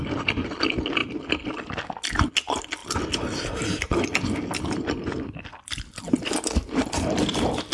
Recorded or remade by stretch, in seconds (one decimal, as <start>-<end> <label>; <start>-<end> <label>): 0.0-7.7 recorded